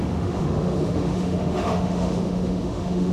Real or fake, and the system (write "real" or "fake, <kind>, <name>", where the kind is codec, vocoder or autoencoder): fake, autoencoder, DAC-VAE